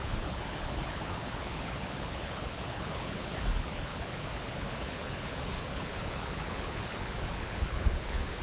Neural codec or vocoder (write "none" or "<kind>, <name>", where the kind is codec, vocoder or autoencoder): codec, HILCodec